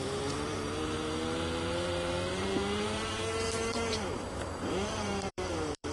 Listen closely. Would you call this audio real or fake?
fake